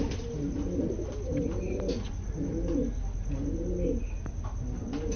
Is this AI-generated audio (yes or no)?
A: no